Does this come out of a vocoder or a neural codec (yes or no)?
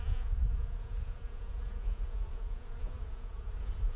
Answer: yes